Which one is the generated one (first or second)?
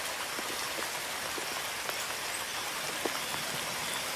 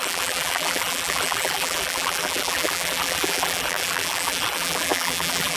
second